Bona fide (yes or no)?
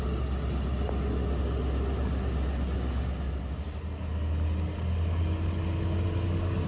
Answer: yes